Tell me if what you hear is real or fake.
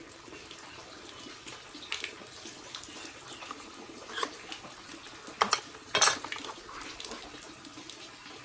real